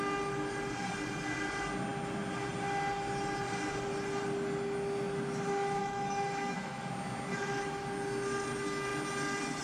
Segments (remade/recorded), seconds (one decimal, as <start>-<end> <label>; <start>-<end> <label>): 0.0-5.8 recorded; 5.8-6.9 remade; 6.9-9.6 recorded